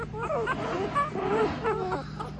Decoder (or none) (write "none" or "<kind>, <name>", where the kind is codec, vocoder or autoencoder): none